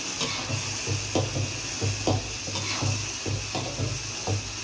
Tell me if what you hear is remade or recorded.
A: recorded